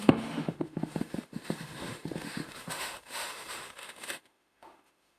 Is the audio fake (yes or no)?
yes